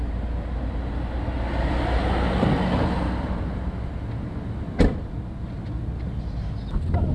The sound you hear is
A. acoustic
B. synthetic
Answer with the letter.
A